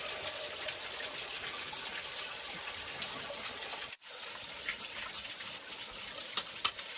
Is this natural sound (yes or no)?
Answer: yes